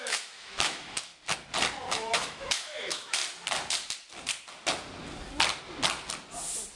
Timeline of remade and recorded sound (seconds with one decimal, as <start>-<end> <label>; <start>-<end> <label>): 0.0-1.1 remade; 1.1-1.9 recorded; 1.9-3.2 remade; 3.2-6.8 recorded